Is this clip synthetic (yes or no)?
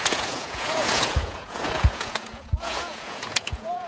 yes